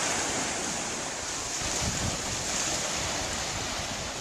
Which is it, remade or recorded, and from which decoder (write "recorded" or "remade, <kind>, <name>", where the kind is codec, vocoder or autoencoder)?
recorded